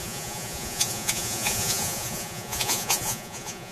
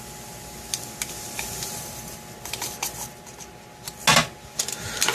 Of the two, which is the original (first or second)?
second